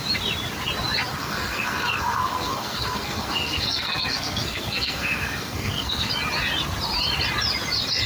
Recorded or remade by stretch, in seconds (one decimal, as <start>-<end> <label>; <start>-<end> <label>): 0.0-1.2 recorded; 1.2-6.1 remade; 6.1-8.1 recorded

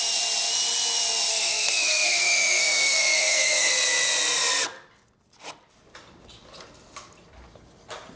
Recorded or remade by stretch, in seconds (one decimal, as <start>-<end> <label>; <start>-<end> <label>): 0.0-1.3 recorded; 1.3-3.7 remade; 3.7-8.2 recorded

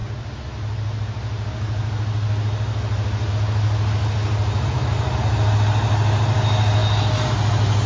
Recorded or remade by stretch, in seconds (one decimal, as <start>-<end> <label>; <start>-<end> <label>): 0.0-7.9 recorded

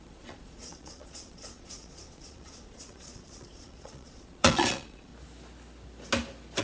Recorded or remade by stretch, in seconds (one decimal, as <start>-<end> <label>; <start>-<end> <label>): 0.0-5.1 remade; 5.1-6.6 recorded

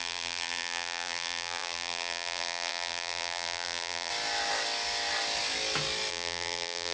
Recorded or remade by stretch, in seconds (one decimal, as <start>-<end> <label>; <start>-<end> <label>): 0.0-4.1 remade; 4.1-6.1 recorded; 6.1-6.9 remade

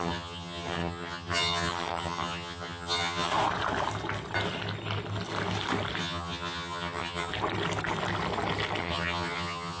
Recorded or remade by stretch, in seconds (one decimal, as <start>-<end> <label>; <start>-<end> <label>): 0.0-3.3 remade; 3.3-6.0 recorded; 6.0-7.3 remade; 7.3-8.8 recorded; 8.8-9.8 remade

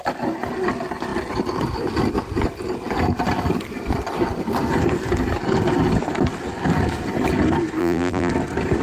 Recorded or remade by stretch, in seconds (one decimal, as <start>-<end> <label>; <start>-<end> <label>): 0.0-7.8 recorded; 7.8-8.3 remade; 8.3-8.8 recorded